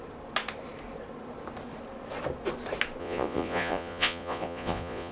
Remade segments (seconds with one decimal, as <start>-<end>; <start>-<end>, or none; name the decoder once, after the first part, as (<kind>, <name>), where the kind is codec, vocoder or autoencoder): 3.0-5.1 (vocoder, Vocos)